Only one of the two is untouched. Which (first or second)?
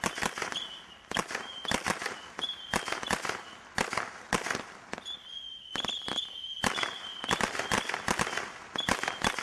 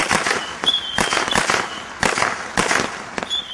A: second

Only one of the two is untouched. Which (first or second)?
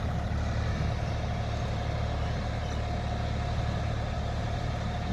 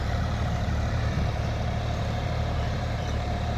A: first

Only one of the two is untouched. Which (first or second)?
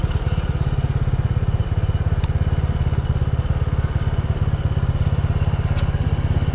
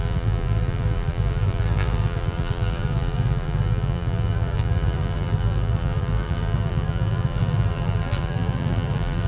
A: first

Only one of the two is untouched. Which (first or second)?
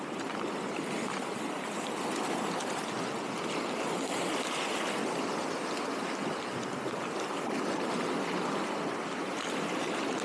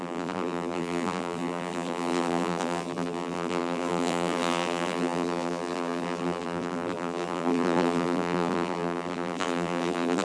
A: first